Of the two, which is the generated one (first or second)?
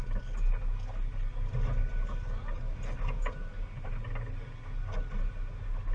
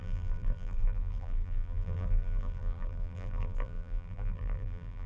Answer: second